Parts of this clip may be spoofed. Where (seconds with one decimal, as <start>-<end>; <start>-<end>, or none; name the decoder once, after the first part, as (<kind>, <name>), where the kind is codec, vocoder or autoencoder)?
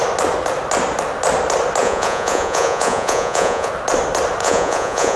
1.8-3.7 (vocoder, Vocos); 4.4-5.2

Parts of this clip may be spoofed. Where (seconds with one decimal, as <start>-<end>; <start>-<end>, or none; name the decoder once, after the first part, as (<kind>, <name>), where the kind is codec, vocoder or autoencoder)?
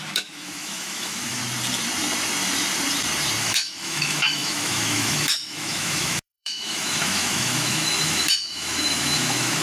0.0-1.4 (autoencoder, DAC-VAE); 3.4-9.6